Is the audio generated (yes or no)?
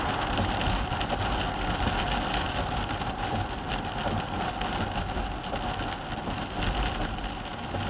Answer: no